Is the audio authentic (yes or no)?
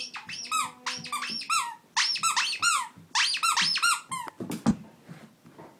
yes